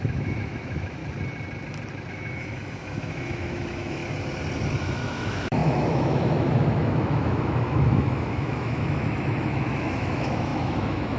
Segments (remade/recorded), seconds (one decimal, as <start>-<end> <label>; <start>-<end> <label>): 0.0-1.0 remade; 1.0-2.1 recorded; 2.1-4.0 remade; 4.0-4.8 recorded; 4.8-11.2 remade